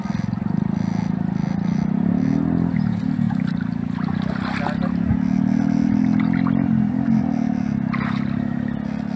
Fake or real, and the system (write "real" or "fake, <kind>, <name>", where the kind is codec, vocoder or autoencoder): real